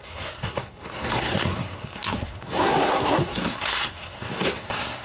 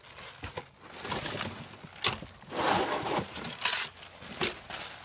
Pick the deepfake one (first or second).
first